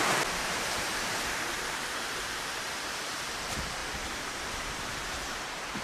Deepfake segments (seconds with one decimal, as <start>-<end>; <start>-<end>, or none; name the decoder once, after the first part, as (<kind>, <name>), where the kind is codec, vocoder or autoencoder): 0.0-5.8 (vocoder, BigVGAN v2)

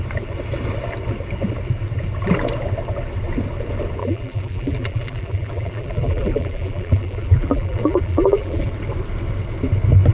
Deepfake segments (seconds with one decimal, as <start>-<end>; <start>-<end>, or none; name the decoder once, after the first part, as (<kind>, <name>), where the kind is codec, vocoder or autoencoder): 4.0-8.7 (vocoder, BigVGAN v2)

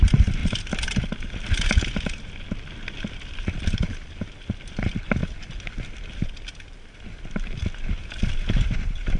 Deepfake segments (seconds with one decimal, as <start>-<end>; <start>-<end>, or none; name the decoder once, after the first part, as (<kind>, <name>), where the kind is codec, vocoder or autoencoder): none

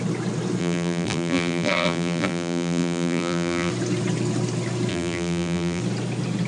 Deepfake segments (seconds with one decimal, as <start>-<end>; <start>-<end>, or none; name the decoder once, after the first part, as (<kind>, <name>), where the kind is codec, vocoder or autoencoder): 0.6-3.7 (vocoder, BigVGAN v2); 4.9-5.8

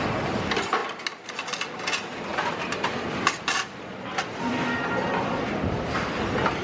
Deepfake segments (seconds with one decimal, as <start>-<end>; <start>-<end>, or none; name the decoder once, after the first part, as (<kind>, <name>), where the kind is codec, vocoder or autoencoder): 2.3-6.6 (vocoder, BigVGAN v2)

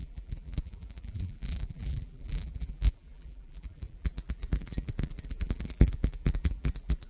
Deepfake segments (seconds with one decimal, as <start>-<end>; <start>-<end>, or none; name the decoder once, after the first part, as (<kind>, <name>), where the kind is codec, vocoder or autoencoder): 0.0-7.1 (vocoder, BigVGAN v2)

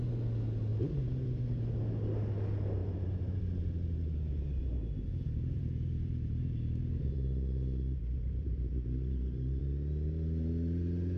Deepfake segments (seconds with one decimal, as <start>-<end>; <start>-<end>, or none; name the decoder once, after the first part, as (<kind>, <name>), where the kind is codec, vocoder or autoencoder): 0.7-1.8 (vocoder, BigVGAN v2); 2.8-3.4; 5.1-9.6